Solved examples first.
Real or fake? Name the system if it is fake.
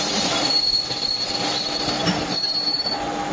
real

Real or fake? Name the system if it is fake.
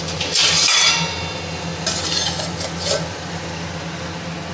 real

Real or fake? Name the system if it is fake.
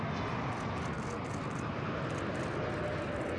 real